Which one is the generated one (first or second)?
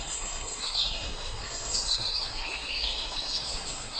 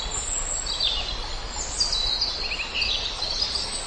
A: first